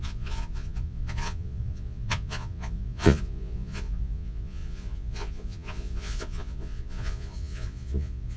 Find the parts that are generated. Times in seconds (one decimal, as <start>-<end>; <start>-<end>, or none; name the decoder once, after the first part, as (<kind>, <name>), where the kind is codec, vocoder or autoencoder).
0.0-8.4 (vocoder, Vocos)